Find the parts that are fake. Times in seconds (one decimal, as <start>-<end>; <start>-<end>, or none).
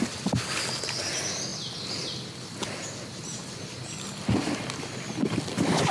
none